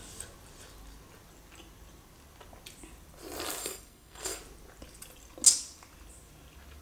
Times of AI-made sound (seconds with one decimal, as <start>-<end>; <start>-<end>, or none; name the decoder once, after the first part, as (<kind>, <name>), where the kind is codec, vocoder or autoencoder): 3.6-4.4 (codec, SNAC)